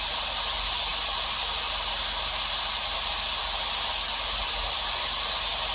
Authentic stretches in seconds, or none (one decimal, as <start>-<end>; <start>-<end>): 0.0-5.7